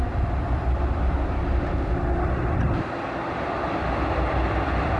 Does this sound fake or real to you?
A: real